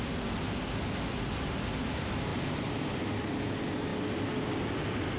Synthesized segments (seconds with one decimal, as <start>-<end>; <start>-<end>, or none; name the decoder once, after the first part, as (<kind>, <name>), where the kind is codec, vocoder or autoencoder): 2.3-3.0 (vocoder, BigVGAN v2)